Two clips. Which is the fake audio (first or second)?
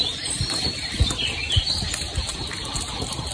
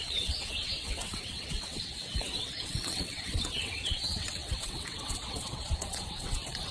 second